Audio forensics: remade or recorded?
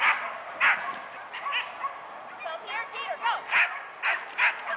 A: recorded